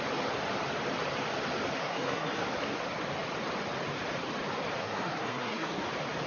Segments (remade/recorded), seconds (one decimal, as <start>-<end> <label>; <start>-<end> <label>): 0.0-1.8 recorded; 1.8-2.4 remade; 2.4-4.8 recorded; 4.8-5.8 remade; 5.8-6.3 recorded